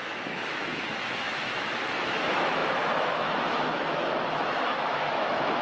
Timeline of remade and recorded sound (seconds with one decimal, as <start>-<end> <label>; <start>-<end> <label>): 0.0-5.6 remade

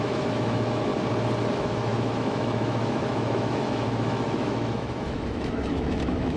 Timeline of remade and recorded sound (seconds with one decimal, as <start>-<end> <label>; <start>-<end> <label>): 0.0-0.9 remade; 0.9-1.5 recorded; 1.5-6.4 remade

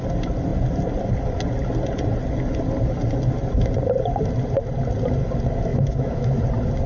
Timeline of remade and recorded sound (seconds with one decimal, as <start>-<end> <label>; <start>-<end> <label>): 0.0-5.7 recorded; 5.7-6.4 remade; 6.4-6.9 recorded

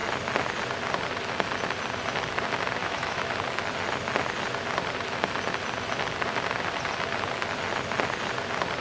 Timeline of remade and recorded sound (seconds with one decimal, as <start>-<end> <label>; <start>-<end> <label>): 0.0-2.8 recorded; 2.8-3.3 remade; 3.3-8.8 recorded

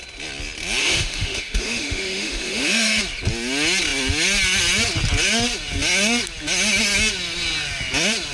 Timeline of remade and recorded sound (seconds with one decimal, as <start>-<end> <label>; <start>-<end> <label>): 0.0-0.8 recorded; 0.8-3.0 remade; 3.0-8.3 recorded

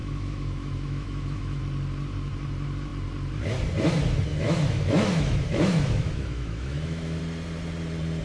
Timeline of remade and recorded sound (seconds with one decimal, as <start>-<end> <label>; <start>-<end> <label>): 0.0-1.6 remade; 1.6-4.3 recorded; 4.3-7.2 remade; 7.2-8.2 recorded